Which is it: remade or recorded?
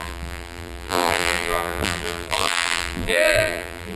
remade